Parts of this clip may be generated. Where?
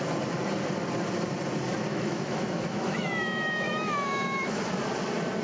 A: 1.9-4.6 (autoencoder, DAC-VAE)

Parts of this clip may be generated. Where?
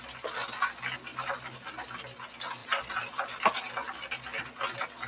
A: 2.6-3.1 (vocoder, BigVGAN v2)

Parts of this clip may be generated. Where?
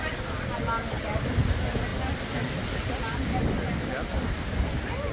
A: none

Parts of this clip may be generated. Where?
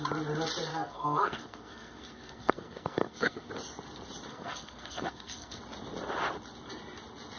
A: 0.7-3.5 (codec, SNAC); 4.3-5.6